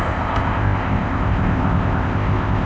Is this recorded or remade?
remade